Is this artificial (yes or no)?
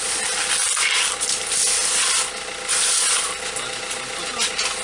no